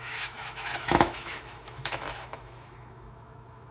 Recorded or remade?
remade